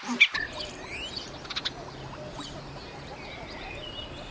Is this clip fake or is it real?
real